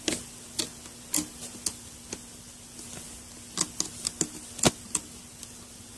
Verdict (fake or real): real